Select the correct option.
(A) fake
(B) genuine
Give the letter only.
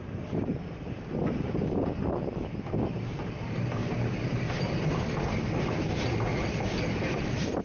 B